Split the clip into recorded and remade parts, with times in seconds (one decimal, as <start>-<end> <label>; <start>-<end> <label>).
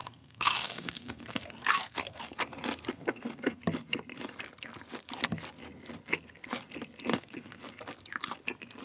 0.0-2.2 remade; 2.2-2.9 recorded; 2.9-3.6 remade; 3.6-7.1 recorded; 7.1-7.6 remade; 7.6-8.8 recorded